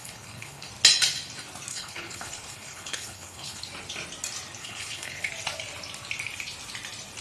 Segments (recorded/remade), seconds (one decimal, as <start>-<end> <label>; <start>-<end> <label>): 0.0-0.7 remade; 0.7-1.7 recorded; 1.7-3.6 remade; 3.6-4.6 recorded; 4.6-5.3 remade; 5.3-7.2 recorded